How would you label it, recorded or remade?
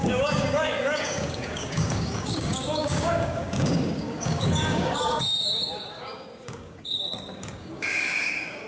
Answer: remade